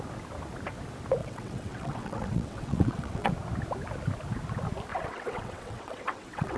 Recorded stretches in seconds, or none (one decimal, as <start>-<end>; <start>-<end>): 0.0-1.2; 3.3-4.9